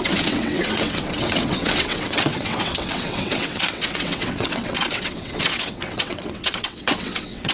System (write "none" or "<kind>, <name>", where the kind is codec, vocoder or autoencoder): vocoder, WaveNeXt